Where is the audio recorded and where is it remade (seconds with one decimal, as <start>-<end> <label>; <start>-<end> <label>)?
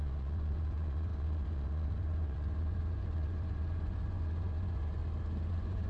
0.0-5.0 remade; 5.0-5.5 recorded; 5.5-5.9 remade